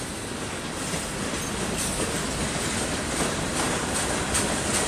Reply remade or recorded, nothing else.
recorded